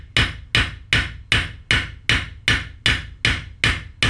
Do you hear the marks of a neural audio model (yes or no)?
no